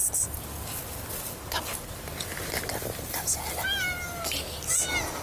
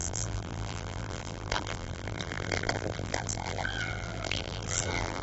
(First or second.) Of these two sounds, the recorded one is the first